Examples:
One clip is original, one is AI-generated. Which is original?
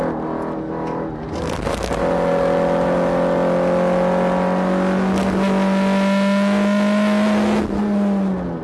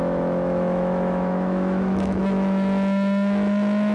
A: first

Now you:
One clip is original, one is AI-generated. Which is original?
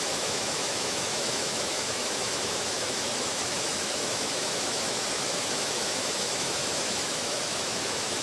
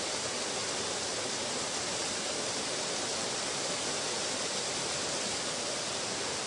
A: second